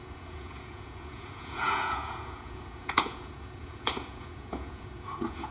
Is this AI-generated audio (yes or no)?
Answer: yes